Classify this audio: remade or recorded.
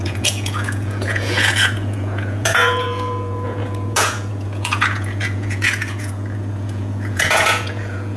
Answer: remade